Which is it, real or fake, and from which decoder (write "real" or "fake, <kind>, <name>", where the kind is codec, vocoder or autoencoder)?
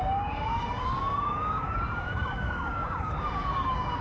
fake, codec, DAC